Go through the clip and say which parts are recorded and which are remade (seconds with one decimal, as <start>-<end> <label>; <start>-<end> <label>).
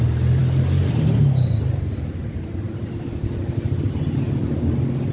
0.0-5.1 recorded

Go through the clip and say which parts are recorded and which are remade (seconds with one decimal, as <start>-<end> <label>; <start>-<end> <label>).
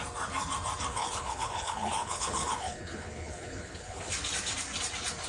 0.0-0.9 recorded; 0.9-4.1 remade; 4.1-5.3 recorded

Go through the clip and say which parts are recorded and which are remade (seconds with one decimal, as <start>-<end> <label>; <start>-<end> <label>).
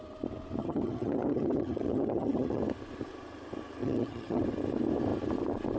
0.0-0.6 recorded; 0.6-2.6 remade; 2.6-3.8 recorded; 3.8-4.4 remade; 4.4-5.8 recorded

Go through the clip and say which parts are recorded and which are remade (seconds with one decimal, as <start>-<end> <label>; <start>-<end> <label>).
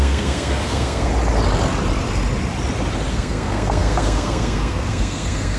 0.0-1.1 remade; 1.1-3.1 recorded; 3.1-5.6 remade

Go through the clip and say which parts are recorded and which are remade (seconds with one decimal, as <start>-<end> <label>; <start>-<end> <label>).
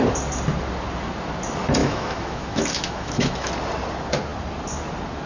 0.0-1.8 recorded; 1.8-3.5 remade; 3.5-5.3 recorded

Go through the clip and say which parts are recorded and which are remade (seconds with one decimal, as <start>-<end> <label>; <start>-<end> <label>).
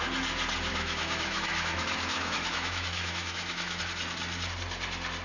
0.0-0.7 recorded; 0.7-3.8 remade; 3.8-5.2 recorded